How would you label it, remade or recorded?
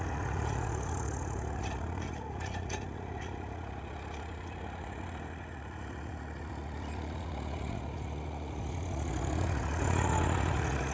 remade